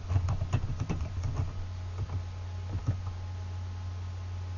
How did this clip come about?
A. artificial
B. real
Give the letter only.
B